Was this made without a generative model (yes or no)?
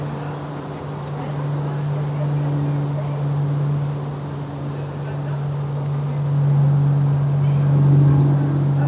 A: yes